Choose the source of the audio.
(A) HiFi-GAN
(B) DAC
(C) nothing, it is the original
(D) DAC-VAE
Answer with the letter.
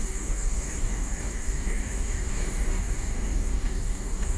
B